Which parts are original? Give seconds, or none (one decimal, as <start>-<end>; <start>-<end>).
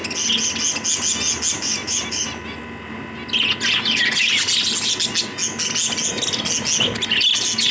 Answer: 0.0-1.5; 2.2-7.7